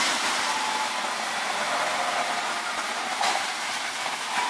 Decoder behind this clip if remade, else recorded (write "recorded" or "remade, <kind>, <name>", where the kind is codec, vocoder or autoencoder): remade, vocoder, BigVGAN v2